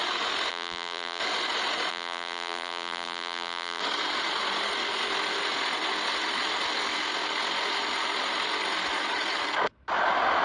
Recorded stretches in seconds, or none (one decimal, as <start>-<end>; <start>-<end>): 0.0-0.5; 1.2-1.9; 3.8-10.4